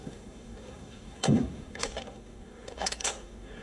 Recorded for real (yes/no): no